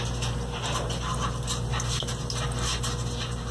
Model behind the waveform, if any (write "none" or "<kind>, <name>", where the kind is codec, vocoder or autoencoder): none